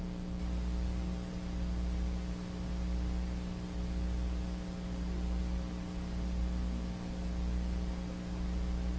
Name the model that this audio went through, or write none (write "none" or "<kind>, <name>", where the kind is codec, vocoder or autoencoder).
none